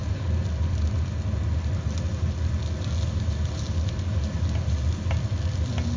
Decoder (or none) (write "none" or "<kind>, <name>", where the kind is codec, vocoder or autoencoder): none